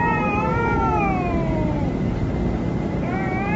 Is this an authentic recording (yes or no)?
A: yes